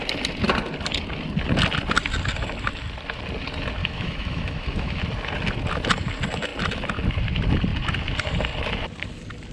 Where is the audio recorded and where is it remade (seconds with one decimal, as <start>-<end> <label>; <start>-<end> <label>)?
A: 0.0-3.8 recorded; 3.8-5.0 remade; 5.0-9.5 recorded